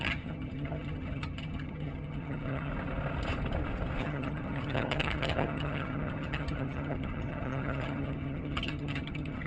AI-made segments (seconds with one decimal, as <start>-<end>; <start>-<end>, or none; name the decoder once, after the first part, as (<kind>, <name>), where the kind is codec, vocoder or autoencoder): 0.0-2.7 (vocoder, HiFi-GAN); 4.0-9.5